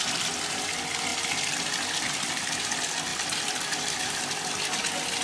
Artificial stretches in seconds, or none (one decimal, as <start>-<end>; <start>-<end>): 1.1-2.0; 3.1-4.2